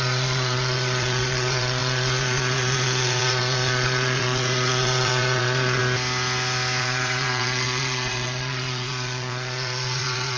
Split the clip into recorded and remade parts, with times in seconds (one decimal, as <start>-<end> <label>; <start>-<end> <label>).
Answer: 0.0-5.8 remade; 5.8-6.8 recorded; 6.8-10.4 remade